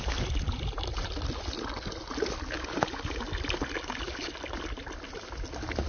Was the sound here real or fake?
real